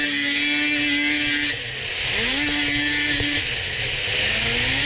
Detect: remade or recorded recorded